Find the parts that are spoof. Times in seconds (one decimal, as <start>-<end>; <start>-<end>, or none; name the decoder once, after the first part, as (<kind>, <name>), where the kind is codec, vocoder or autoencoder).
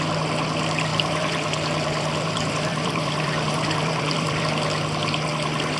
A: 0.9-4.4 (vocoder, BigVGAN v2)